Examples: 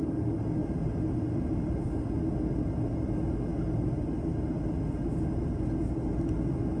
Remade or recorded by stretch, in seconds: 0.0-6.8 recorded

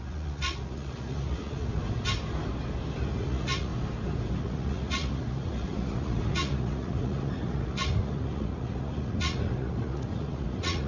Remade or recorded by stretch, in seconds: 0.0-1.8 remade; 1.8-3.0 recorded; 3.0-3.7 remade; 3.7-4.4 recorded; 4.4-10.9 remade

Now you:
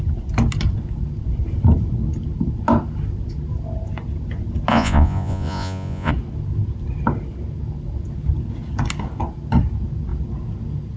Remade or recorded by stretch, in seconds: 0.0-4.7 recorded; 4.7-6.1 remade; 6.1-11.0 recorded